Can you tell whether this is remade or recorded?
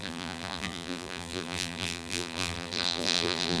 remade